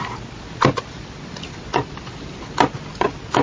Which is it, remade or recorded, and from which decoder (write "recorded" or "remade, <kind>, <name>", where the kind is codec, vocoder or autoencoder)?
recorded